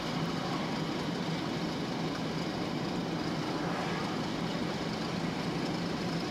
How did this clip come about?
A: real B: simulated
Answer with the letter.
A